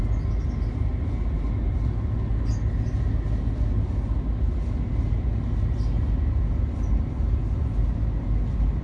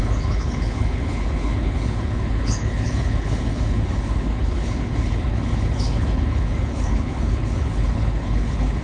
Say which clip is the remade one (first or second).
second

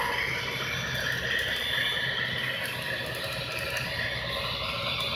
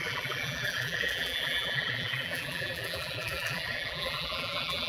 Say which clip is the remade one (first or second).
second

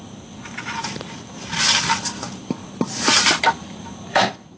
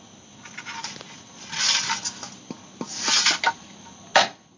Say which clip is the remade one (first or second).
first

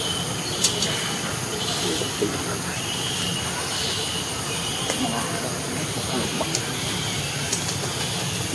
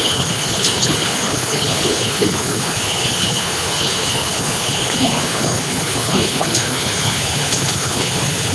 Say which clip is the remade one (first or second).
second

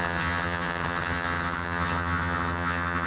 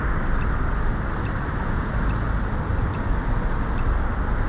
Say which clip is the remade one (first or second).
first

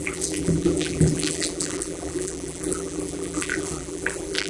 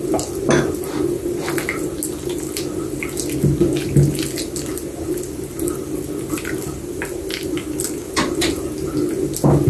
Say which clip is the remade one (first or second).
first